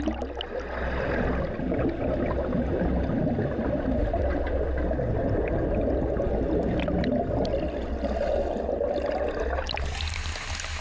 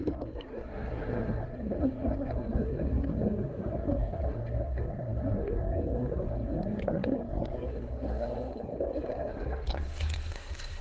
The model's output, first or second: second